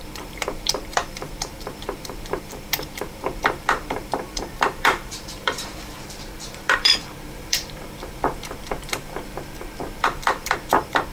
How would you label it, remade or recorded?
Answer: remade